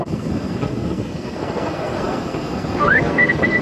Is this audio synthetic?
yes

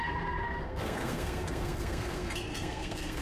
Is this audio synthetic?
yes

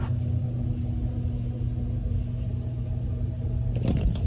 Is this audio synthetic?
no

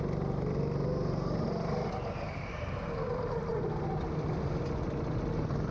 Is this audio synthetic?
no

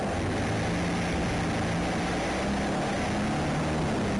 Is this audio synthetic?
no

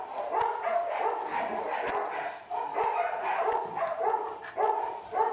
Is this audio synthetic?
no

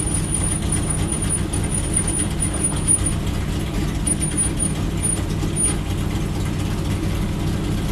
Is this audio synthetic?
no